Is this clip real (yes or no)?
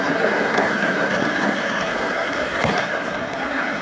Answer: no